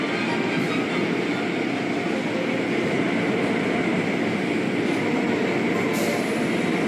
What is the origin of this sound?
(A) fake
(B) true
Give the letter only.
B